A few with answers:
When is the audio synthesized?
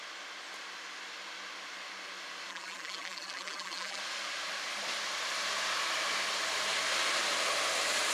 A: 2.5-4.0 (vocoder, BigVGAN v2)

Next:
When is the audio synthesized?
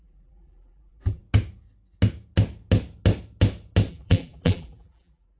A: 0.0-1.2 (vocoder, BigVGAN v2); 3.9-5.4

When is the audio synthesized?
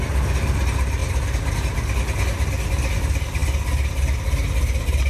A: none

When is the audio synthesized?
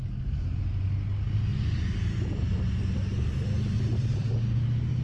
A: 1.5-4.3 (vocoder, BigVGAN v2)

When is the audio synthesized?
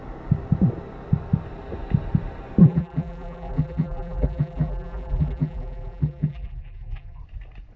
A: 2.6-7.2 (vocoder, BigVGAN v2)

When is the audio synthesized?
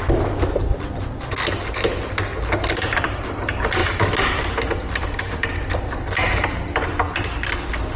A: none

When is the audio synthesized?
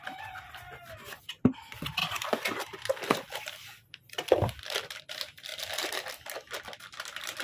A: 2.0-5.0 (vocoder, BigVGAN v2)